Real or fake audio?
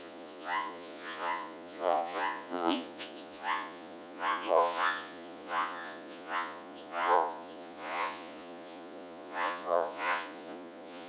fake